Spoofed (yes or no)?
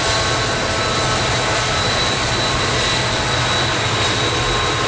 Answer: no